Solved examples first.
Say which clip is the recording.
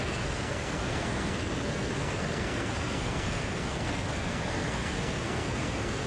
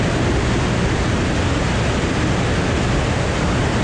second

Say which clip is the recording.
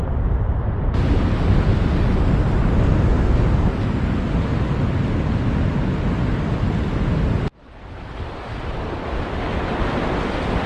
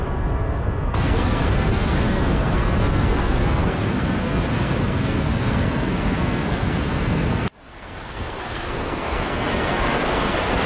first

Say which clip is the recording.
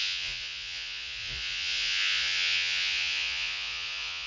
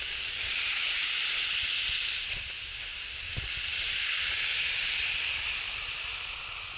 second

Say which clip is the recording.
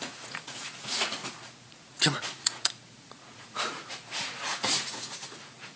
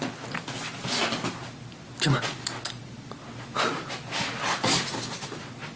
second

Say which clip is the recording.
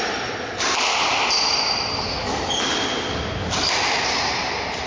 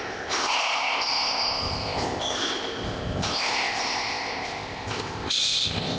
first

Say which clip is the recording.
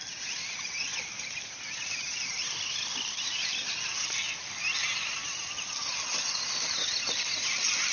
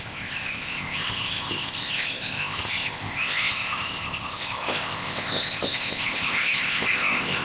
first